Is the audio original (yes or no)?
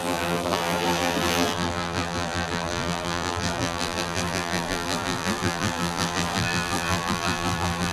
no